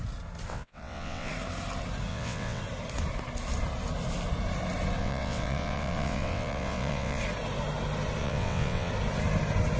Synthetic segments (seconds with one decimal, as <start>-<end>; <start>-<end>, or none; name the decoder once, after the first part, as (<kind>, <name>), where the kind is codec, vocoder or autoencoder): 0.5-1.3 (vocoder, WaveNeXt); 2.1-2.6; 5.0-7.2; 8.2-8.9